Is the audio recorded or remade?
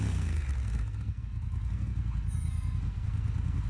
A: remade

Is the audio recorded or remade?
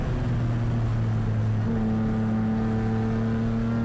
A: recorded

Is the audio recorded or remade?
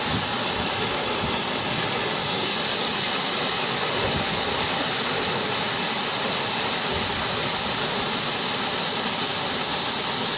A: recorded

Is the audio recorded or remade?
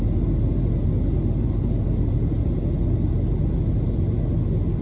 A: recorded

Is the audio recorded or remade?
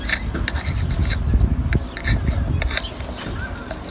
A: recorded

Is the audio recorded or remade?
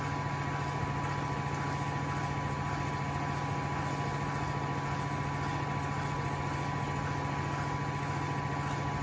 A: recorded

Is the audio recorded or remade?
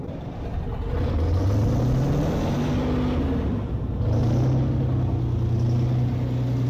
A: recorded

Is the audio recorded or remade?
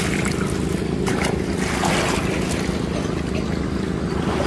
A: recorded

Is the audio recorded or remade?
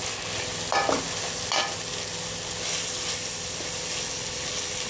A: recorded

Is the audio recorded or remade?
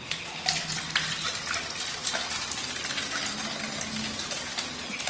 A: recorded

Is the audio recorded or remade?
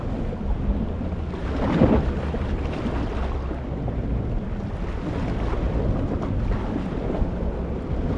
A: recorded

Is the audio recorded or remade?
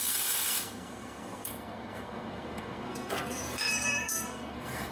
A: remade